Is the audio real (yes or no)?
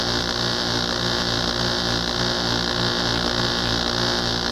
yes